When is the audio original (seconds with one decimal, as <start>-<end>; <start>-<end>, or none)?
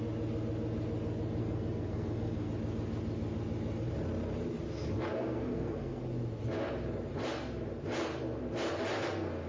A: 0.0-1.4; 2.5-5.1; 6.0-9.5